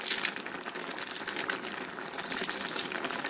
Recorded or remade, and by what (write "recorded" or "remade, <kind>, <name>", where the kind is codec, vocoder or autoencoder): recorded